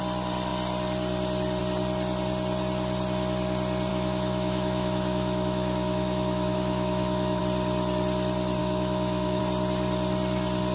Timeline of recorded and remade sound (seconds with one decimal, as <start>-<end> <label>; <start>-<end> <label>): 0.0-3.9 recorded; 3.9-7.4 remade; 7.4-8.6 recorded; 8.6-9.4 remade; 9.4-10.7 recorded